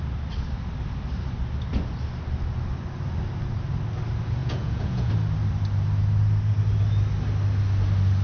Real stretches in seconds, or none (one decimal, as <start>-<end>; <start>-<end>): 0.0-4.4; 5.1-8.2